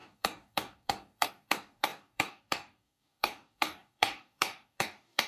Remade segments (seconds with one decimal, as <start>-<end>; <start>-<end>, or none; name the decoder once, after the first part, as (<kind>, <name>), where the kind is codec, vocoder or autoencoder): 0.0-5.3 (codec, DAC)